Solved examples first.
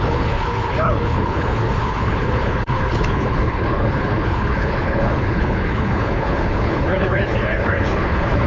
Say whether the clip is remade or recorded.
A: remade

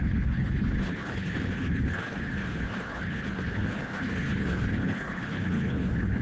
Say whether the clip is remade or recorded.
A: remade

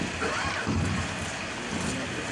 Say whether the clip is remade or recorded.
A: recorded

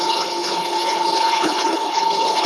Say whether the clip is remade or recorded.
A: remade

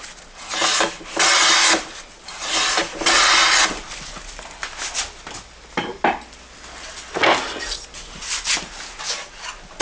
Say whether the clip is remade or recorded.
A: recorded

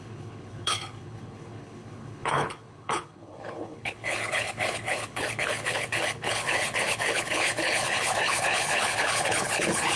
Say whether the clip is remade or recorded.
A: remade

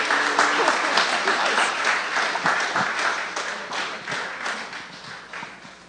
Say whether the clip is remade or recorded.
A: recorded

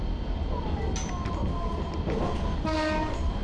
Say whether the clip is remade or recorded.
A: recorded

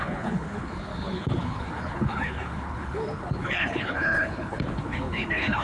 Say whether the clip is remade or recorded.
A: remade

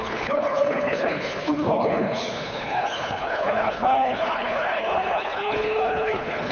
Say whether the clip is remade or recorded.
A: remade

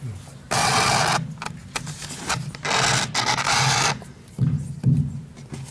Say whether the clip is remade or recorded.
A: recorded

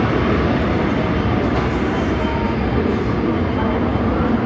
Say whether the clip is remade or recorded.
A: recorded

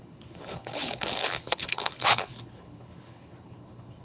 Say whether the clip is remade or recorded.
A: remade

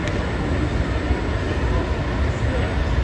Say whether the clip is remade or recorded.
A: recorded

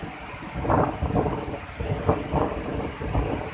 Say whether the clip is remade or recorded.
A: recorded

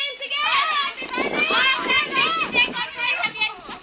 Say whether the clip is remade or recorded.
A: recorded